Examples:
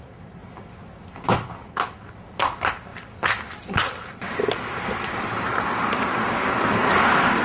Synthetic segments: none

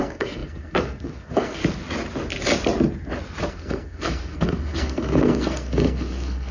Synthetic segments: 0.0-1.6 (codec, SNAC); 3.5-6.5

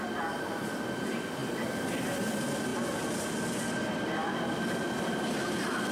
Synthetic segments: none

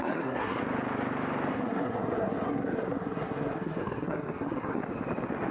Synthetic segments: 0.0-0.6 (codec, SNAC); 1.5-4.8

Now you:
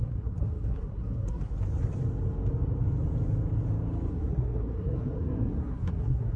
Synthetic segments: 0.0-1.5 (codec, SNAC); 4.1-6.4

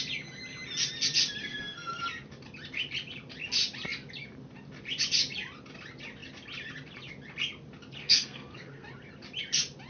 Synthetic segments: 1.4-2.0 (codec, SNAC); 8.0-8.9